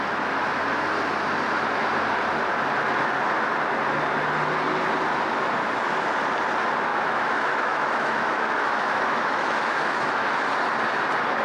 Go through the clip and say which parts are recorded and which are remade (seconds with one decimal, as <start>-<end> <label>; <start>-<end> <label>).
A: 0.0-6.9 recorded; 6.9-10.3 remade; 10.3-11.4 recorded